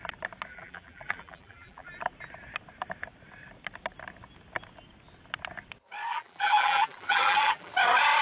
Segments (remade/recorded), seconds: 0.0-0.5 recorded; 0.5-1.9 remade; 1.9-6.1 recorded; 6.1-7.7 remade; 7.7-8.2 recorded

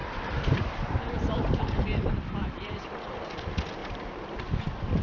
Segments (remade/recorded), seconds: 0.0-3.0 remade; 3.0-3.8 recorded; 3.8-4.4 remade; 4.4-5.0 recorded

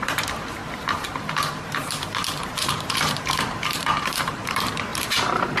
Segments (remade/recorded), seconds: 0.0-0.6 remade; 0.6-2.5 recorded; 2.5-5.6 remade

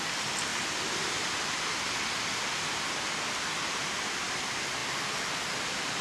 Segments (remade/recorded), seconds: 0.0-0.5 remade; 0.5-3.6 recorded; 3.6-4.8 remade; 4.8-6.0 recorded

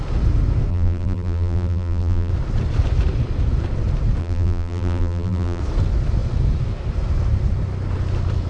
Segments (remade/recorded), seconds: 0.0-0.7 recorded; 0.7-2.3 remade; 2.3-4.2 recorded; 4.2-5.6 remade; 5.6-8.5 recorded